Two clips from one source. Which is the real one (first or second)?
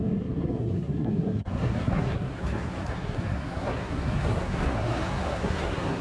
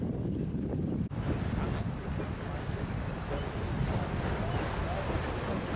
second